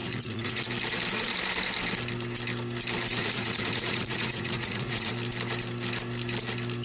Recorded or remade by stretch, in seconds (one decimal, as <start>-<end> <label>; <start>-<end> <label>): 0.0-0.7 remade; 0.7-3.1 recorded; 3.1-5.1 remade; 5.1-6.8 recorded